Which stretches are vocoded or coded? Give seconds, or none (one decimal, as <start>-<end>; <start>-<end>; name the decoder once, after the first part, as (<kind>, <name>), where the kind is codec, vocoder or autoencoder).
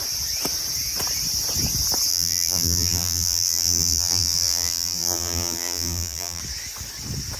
2.1-6.4 (vocoder, BigVGAN v2)